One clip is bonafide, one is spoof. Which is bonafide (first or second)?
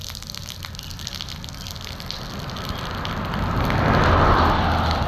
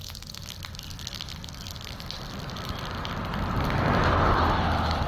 first